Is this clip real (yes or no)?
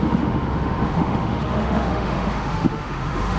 no